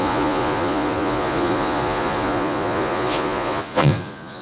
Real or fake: fake